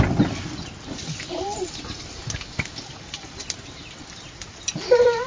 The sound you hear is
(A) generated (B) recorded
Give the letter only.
B